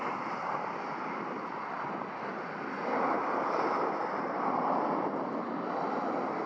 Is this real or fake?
real